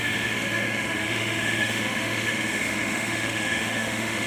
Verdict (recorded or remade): remade